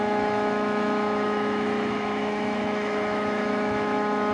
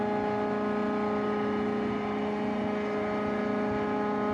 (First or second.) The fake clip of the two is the first